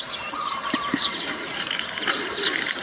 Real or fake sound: fake